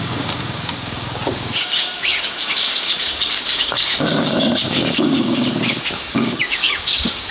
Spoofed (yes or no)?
yes